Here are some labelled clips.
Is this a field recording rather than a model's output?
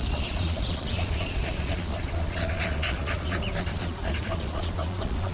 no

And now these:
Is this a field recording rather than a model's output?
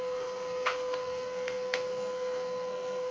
no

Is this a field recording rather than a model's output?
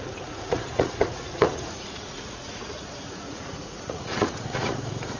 no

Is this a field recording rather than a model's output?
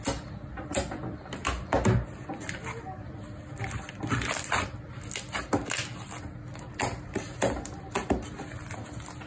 yes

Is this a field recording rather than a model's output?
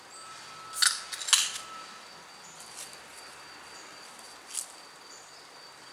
yes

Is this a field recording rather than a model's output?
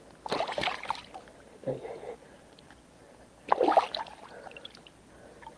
yes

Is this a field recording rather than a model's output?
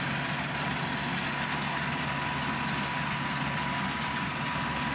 yes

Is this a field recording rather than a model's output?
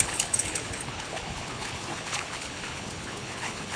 no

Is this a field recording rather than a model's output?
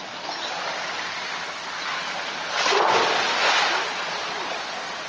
yes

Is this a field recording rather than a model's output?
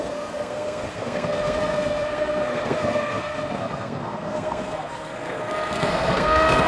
no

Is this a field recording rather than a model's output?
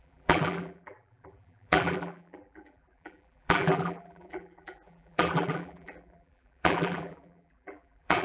no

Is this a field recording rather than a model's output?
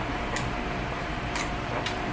no